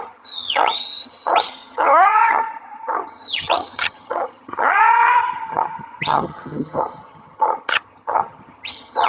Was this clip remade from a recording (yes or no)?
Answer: yes